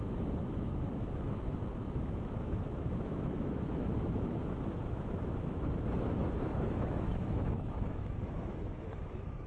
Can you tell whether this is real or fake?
fake